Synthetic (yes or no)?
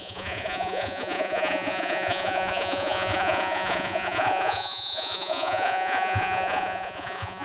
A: yes